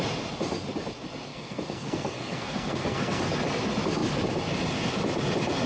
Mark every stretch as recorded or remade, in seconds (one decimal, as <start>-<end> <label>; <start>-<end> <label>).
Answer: 0.0-1.3 recorded; 1.3-3.2 remade; 3.2-5.7 recorded